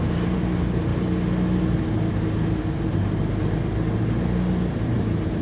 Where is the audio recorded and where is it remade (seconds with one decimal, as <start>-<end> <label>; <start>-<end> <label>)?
0.0-0.9 remade; 0.9-2.4 recorded; 2.4-3.6 remade; 3.6-4.8 recorded; 4.8-5.4 remade